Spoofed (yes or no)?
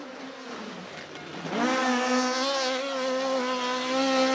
no